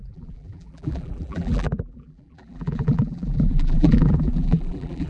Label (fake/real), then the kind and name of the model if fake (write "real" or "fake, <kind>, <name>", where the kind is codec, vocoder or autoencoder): fake, vocoder, BigVGAN v2